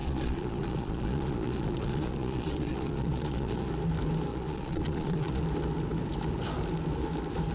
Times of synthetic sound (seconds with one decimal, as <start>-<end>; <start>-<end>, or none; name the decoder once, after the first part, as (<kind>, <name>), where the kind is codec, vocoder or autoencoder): 0.0-3.7 (vocoder, Vocos); 4.3-5.4

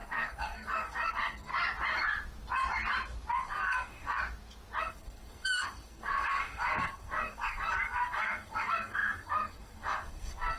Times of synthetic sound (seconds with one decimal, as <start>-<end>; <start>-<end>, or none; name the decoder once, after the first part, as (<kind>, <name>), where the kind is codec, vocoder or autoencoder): 0.0-1.5 (codec, SNAC); 3.3-4.2; 4.8-10.6

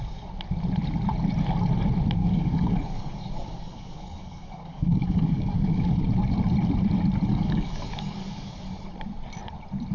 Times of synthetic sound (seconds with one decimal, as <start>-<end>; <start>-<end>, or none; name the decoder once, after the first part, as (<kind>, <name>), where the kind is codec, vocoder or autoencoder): 2.2-6.0 (codec, DAC); 7.3-8.7

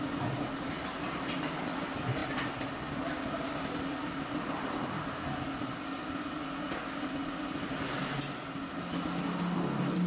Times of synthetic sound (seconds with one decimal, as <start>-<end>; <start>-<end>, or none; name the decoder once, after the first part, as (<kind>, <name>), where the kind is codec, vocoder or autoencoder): none

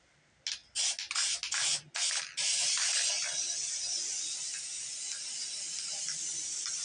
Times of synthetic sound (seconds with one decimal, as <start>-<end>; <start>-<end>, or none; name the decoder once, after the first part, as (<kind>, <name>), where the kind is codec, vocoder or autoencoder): none

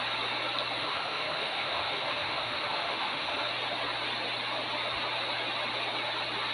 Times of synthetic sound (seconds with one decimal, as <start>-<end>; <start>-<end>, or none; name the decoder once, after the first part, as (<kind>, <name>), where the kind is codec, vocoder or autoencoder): 0.8-3.4 (autoencoder, DAC-VAE)

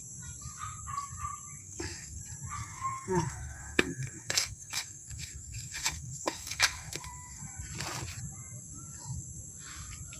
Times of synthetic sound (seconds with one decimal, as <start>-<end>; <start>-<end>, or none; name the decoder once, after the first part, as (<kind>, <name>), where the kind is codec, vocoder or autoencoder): 1.6-2.2 (codec, SNAC); 2.6-7.4